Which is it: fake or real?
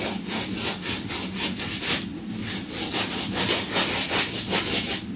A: real